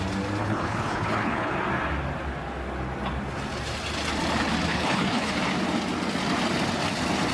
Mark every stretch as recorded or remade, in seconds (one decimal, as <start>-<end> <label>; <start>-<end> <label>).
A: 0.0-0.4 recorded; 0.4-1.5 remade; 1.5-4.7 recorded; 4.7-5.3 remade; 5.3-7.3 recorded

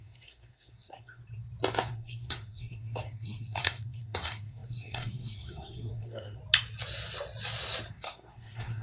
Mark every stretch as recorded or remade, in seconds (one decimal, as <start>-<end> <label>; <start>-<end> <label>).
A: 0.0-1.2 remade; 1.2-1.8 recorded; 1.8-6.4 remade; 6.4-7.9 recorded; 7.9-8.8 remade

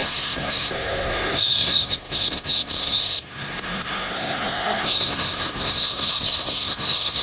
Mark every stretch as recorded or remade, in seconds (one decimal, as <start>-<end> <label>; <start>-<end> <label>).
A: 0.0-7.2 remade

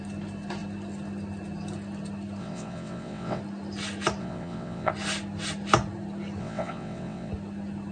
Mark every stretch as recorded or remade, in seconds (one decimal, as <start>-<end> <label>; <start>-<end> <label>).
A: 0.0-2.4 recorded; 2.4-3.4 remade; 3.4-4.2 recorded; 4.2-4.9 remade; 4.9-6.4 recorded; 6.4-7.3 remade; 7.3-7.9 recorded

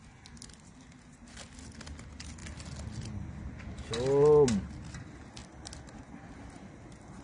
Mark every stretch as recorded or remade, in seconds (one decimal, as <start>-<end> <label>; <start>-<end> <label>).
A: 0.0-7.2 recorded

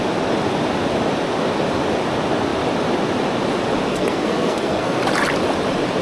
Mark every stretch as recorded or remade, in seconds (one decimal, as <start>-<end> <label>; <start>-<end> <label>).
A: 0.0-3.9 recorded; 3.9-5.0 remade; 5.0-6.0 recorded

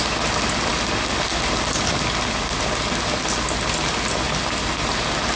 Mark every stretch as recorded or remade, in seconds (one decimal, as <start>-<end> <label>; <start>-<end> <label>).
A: 0.0-5.4 recorded

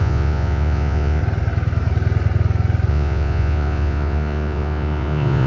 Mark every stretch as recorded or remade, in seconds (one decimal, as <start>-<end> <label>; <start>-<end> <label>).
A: 0.0-1.2 remade; 1.2-2.9 recorded; 2.9-5.5 remade